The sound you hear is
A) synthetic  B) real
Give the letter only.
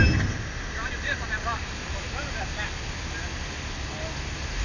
B